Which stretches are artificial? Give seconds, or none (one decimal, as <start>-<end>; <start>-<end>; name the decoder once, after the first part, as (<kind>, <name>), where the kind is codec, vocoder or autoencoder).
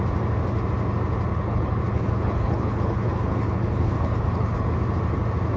1.3-4.7 (codec, HILCodec)